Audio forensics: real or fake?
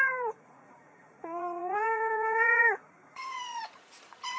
fake